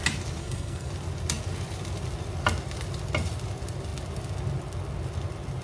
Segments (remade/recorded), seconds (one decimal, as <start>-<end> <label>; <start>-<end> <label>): 0.0-0.4 recorded; 0.4-0.9 remade; 0.9-5.6 recorded